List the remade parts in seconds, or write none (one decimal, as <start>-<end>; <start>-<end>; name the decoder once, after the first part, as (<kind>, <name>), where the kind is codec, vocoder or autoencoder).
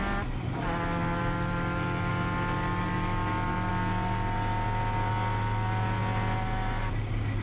none